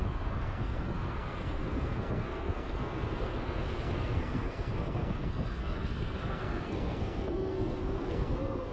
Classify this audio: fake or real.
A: fake